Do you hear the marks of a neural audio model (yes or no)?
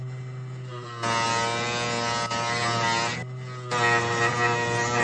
no